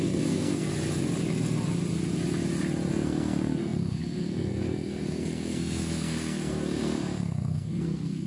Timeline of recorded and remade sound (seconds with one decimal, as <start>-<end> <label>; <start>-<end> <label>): 0.0-0.7 remade; 0.7-2.9 recorded; 2.9-8.3 remade